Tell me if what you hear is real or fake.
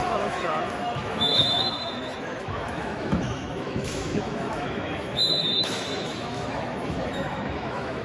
fake